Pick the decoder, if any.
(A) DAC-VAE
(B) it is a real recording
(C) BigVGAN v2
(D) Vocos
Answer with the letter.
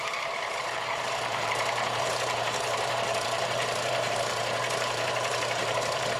C